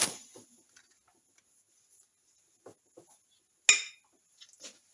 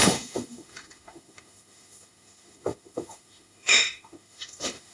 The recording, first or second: first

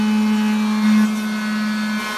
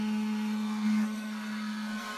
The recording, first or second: first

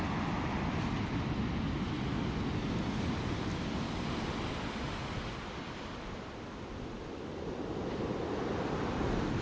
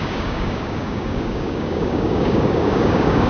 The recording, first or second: first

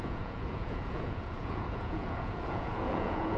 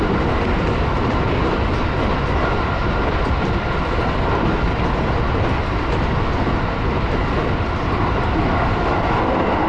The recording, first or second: second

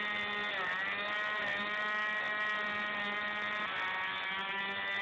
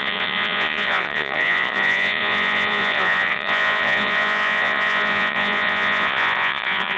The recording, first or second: first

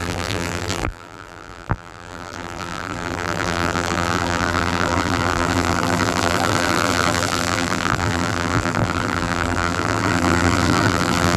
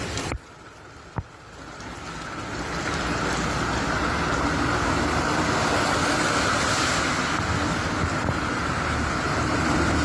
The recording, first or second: second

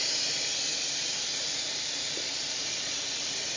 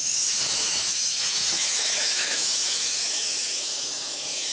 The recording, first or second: first